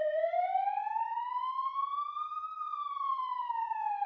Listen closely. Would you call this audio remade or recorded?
recorded